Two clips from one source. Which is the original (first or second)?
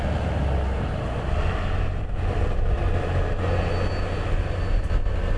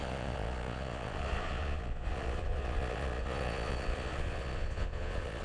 first